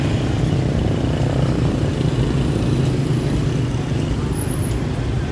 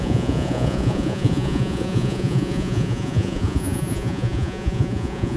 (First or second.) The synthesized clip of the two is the second